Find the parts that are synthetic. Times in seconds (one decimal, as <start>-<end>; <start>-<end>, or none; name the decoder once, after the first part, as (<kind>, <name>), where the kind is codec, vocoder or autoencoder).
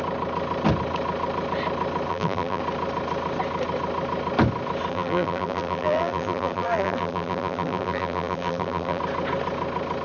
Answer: 2.1-2.6 (vocoder, BigVGAN v2); 4.9-9.0